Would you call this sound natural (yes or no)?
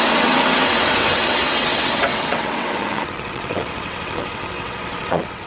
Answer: no